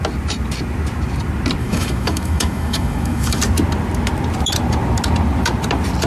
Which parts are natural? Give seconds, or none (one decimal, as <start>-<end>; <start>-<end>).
0.0-1.6; 3.4-6.1